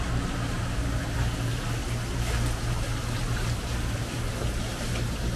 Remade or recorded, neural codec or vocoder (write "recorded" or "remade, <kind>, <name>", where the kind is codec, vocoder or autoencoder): recorded